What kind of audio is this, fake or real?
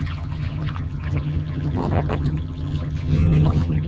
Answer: fake